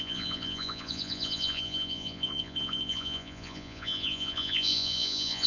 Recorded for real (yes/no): no